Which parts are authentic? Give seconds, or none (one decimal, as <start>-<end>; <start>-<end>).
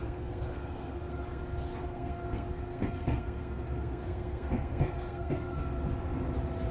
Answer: 1.4-1.8; 5.8-6.7